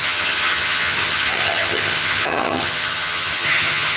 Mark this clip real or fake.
fake